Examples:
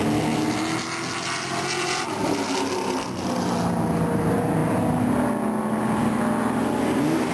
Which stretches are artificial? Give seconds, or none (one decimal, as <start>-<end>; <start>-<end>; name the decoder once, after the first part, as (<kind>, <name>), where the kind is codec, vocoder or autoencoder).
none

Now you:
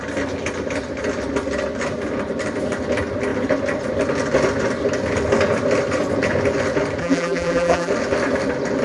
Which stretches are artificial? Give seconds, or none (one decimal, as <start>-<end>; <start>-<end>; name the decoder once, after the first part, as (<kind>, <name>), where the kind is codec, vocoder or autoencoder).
7.0-7.9 (vocoder, BigVGAN v2)

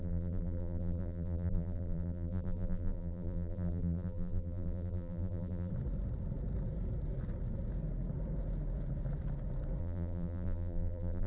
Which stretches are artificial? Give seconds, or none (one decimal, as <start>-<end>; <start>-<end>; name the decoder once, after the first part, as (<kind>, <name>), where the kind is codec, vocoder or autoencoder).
0.0-5.7 (vocoder, BigVGAN v2); 9.8-11.3

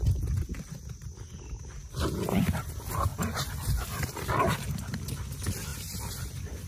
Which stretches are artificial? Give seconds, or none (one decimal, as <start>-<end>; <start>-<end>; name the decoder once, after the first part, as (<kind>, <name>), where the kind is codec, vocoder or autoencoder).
3.1-4.7 (vocoder, BigVGAN v2); 5.7-6.7